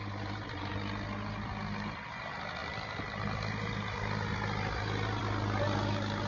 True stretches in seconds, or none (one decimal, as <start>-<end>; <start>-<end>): 0.7-6.3